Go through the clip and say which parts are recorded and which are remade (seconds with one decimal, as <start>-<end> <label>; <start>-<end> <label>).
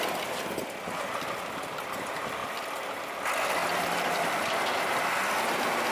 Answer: 0.0-2.4 recorded; 2.4-3.0 remade; 3.0-3.6 recorded; 3.6-4.8 remade; 4.8-5.9 recorded